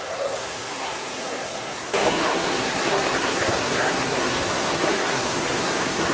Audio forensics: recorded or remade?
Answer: remade